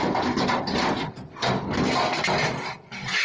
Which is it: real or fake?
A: real